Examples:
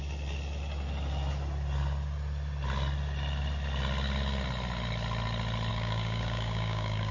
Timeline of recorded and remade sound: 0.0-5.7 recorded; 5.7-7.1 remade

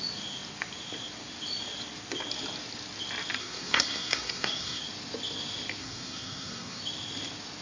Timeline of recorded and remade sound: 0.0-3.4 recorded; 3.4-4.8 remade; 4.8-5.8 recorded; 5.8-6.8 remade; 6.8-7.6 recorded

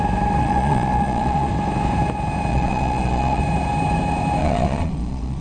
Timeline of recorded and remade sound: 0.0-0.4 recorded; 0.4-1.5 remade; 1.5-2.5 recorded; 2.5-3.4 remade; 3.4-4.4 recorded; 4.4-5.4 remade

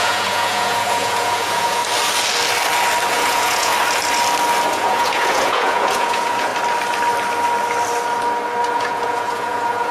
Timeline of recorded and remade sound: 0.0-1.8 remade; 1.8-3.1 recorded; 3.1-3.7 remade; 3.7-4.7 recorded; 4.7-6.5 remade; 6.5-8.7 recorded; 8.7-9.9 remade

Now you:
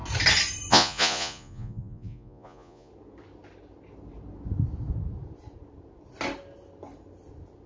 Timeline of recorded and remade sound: 0.0-0.7 recorded; 0.7-2.9 remade; 2.9-7.7 recorded